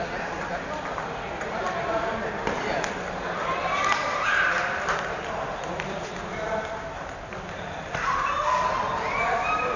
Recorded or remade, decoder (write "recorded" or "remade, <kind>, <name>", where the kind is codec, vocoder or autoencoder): remade, vocoder, BigVGAN v2